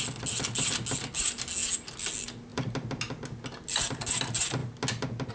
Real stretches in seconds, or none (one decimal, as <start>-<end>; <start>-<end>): 0.0-5.3